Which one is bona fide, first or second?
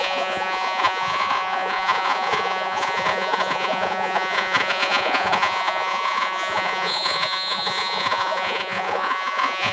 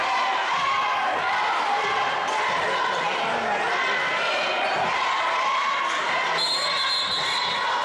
second